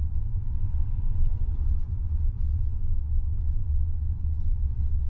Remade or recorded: remade